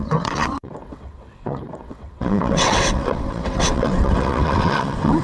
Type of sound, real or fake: fake